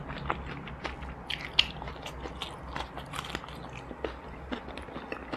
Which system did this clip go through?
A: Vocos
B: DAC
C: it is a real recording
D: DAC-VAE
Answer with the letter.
C